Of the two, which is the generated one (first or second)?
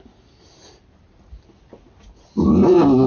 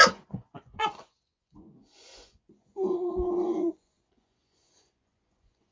second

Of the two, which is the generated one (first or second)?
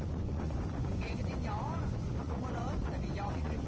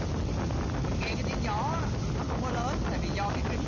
first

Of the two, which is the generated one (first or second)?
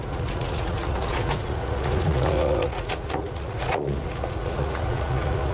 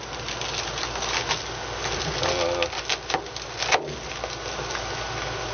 first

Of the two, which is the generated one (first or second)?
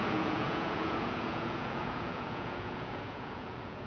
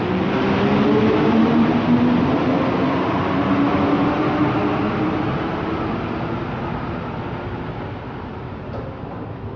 first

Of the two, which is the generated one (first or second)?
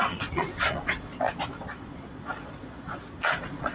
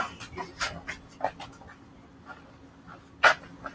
first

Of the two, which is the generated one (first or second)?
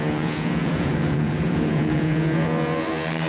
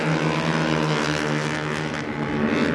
first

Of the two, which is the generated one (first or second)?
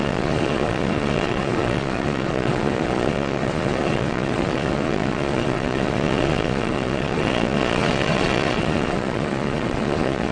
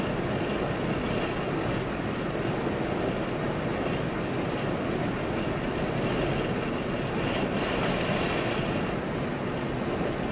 first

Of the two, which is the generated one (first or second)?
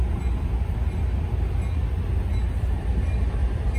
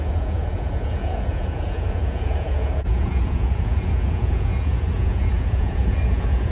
second